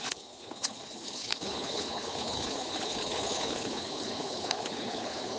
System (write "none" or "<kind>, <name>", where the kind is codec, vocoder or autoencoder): codec, HILCodec